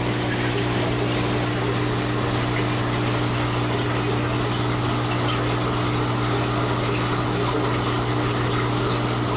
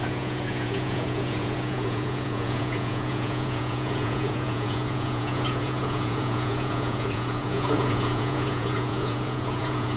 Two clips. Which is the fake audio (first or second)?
second